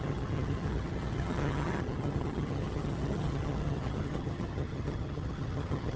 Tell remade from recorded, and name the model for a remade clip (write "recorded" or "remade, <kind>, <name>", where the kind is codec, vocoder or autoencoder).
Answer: remade, vocoder, HiFi-GAN